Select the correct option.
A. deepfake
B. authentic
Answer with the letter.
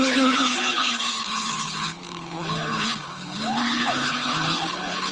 A